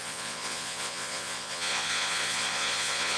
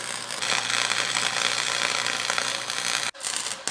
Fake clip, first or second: first